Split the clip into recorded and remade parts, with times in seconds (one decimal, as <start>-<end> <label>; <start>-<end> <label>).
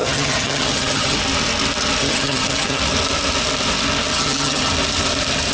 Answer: 0.0-1.2 remade; 1.2-2.0 recorded; 2.0-2.8 remade; 2.8-4.1 recorded; 4.1-4.7 remade; 4.7-5.5 recorded